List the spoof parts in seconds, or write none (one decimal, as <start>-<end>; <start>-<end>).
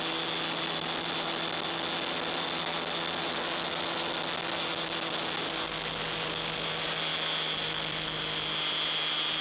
none